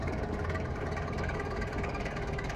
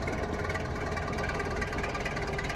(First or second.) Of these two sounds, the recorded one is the second